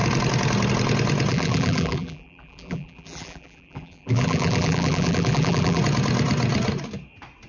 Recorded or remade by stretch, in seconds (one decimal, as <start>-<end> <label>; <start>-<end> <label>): 0.0-1.3 recorded; 1.3-5.8 remade; 5.8-7.5 recorded